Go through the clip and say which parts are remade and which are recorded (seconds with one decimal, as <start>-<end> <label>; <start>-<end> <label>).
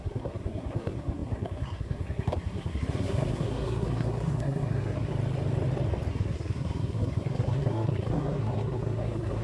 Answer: 0.0-5.1 remade; 5.1-6.1 recorded; 6.1-9.4 remade